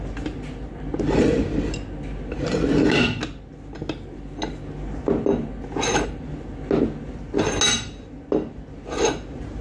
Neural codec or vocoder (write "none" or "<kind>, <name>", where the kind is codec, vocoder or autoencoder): none